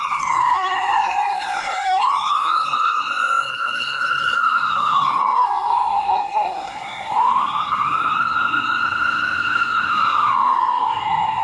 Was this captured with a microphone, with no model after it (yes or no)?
no